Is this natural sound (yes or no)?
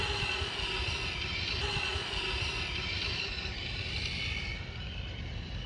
yes